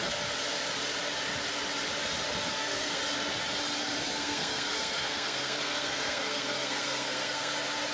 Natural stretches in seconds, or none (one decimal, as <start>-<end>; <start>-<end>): 0.0-2.5; 3.0-3.8; 7.5-7.9